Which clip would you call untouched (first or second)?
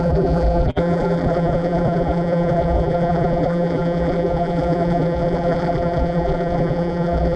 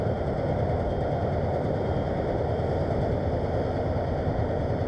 second